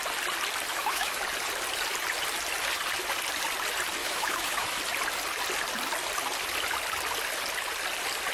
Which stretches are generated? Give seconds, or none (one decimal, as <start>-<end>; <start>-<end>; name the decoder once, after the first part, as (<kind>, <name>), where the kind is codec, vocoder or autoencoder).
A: 0.7-1.2 (autoencoder, DAC-VAE); 4.0-4.8